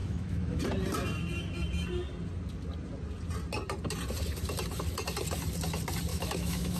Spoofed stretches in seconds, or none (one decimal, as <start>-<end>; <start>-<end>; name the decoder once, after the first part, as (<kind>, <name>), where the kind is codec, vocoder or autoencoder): 0.0-0.6 (autoencoder, DAC-VAE); 6.1-6.8